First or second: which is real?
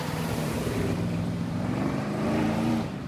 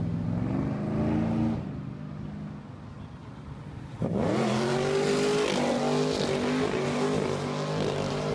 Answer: second